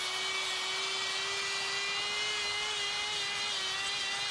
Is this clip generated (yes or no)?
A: no